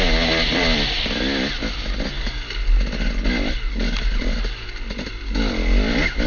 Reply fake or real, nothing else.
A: real